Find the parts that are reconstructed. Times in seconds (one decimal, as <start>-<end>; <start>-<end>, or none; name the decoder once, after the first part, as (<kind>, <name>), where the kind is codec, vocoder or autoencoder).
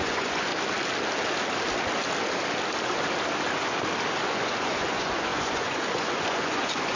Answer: 0.0-0.5 (vocoder, Vocos); 4.2-7.0